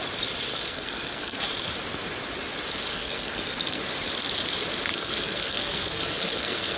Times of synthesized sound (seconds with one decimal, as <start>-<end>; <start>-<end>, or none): 0.5-1.4; 2.9-3.8; 4.9-6.8